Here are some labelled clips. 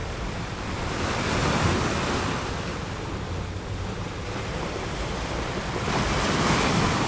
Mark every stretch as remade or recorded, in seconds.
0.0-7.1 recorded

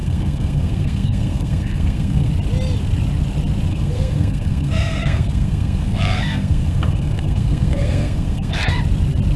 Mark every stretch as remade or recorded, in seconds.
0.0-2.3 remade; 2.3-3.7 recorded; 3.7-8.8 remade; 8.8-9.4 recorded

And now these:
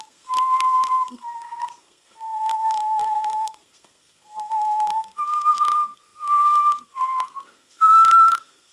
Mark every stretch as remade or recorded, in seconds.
0.0-8.7 remade